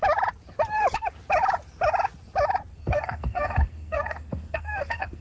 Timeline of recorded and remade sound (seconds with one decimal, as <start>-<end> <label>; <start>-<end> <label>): 0.0-2.7 recorded; 2.7-5.2 remade